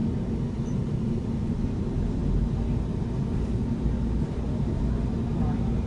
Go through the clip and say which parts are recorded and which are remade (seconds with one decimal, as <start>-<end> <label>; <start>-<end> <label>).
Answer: 0.0-5.9 recorded

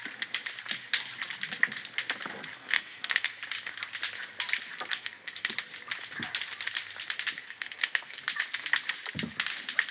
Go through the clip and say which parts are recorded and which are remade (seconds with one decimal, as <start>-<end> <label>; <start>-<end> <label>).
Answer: 0.0-2.5 recorded; 2.5-3.4 remade; 3.4-4.9 recorded; 4.9-5.5 remade; 5.5-7.4 recorded; 7.4-8.2 remade; 8.2-9.9 recorded

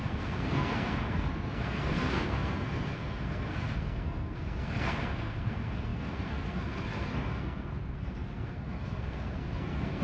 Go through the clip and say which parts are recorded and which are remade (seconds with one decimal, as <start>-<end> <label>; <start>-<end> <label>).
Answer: 0.0-10.0 remade

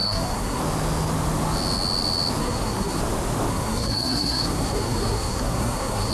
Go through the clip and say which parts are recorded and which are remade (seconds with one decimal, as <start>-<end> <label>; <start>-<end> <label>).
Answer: 0.0-0.6 remade; 0.6-2.4 recorded; 2.4-3.0 remade; 3.0-3.5 recorded; 3.5-6.1 remade

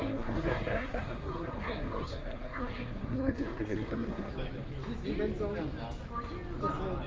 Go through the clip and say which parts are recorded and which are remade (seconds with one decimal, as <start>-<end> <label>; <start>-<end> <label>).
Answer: 0.0-4.3 remade; 4.3-7.1 recorded

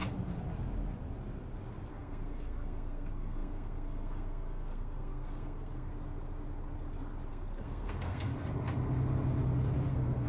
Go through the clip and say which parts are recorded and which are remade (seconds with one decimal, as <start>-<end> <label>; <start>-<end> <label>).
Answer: 0.0-1.9 recorded; 1.9-5.9 remade; 5.9-7.3 recorded; 7.3-8.3 remade; 8.3-9.9 recorded; 9.9-10.3 remade

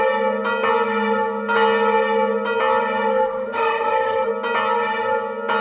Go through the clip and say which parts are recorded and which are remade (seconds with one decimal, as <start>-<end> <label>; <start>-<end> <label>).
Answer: 0.0-3.1 recorded; 3.1-4.3 remade; 4.3-5.6 recorded